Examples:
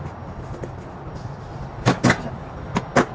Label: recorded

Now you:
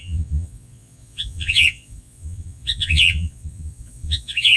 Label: remade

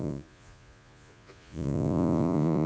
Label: remade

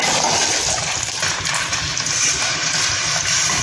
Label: recorded